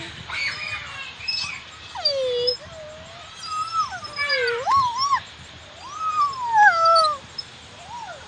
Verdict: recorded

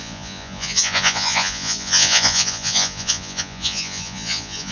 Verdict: remade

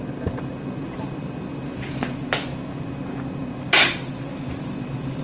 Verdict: recorded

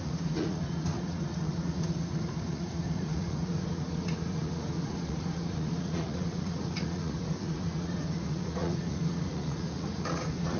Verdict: remade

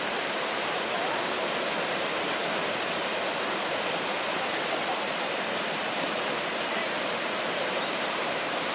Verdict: remade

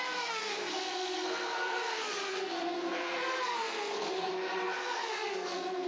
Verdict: remade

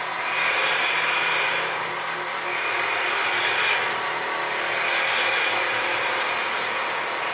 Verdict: recorded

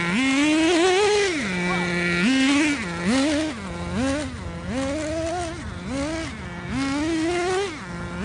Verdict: recorded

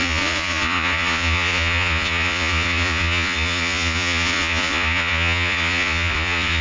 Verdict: remade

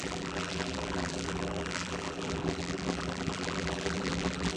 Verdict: remade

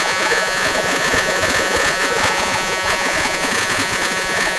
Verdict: remade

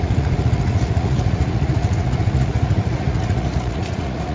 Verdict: remade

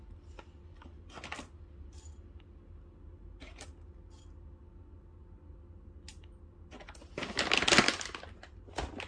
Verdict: recorded